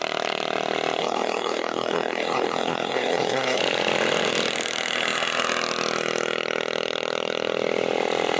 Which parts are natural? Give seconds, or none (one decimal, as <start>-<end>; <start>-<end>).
0.0-1.0; 3.6-8.4